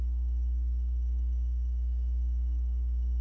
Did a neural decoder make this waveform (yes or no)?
yes